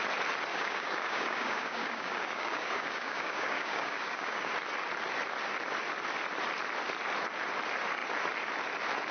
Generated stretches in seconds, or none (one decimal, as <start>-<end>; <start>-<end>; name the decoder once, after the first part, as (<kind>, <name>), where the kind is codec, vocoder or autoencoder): 0.5-4.5 (codec, DAC)